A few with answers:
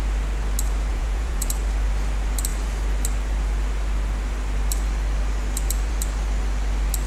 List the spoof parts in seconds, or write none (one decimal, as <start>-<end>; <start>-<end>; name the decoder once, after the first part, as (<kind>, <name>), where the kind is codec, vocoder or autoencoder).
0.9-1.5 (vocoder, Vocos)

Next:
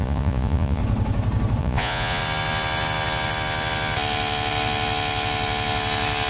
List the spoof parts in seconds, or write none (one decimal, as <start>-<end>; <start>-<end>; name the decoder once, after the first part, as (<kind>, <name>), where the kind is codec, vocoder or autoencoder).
0.0-0.8 (vocoder, Vocos); 1.6-2.2

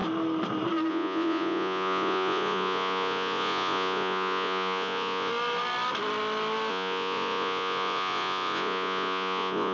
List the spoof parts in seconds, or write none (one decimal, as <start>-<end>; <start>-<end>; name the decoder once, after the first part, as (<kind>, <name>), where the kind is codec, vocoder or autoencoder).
0.9-5.3 (vocoder, Vocos); 6.7-9.7